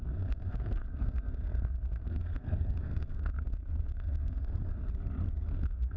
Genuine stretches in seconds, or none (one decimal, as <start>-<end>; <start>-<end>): 4.8-5.5